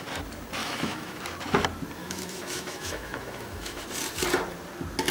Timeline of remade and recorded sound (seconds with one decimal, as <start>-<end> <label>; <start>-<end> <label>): 0.0-0.6 recorded; 0.6-1.2 remade; 1.2-2.0 recorded; 2.0-3.8 remade; 3.8-5.1 recorded